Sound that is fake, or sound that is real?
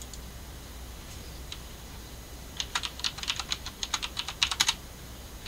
fake